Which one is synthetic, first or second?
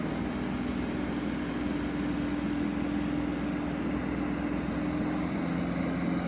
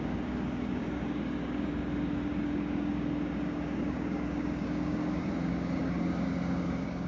second